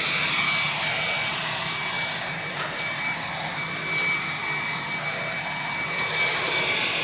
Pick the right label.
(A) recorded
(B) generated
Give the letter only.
A